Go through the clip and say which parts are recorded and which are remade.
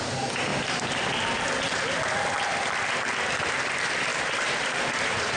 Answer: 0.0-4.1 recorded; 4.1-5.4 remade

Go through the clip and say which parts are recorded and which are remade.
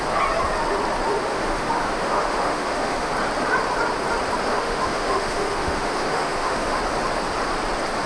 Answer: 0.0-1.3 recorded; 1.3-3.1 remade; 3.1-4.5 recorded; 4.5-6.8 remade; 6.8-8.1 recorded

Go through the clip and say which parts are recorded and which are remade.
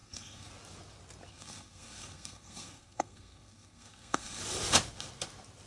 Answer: 0.0-0.5 remade; 0.5-1.3 recorded; 1.3-4.4 remade; 4.4-5.7 recorded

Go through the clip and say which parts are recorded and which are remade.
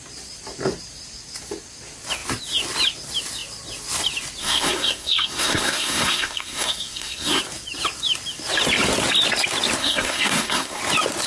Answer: 0.0-4.4 recorded; 4.4-7.4 remade; 7.4-9.8 recorded; 9.8-10.8 remade; 10.8-11.3 recorded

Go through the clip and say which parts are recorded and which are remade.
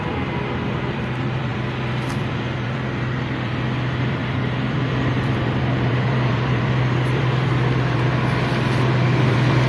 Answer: 0.0-9.7 remade